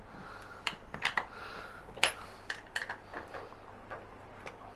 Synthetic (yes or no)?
no